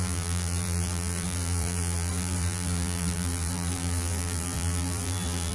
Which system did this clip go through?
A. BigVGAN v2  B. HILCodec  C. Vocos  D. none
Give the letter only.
A